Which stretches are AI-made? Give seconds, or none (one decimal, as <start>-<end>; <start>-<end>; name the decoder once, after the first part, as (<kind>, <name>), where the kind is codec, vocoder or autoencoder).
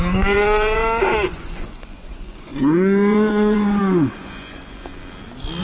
0.0-4.9 (vocoder, Vocos)